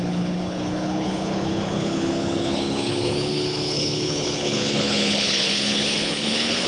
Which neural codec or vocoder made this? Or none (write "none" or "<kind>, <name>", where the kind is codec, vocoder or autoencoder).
codec, HILCodec